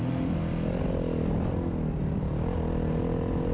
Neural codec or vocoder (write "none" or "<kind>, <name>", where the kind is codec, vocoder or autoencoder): none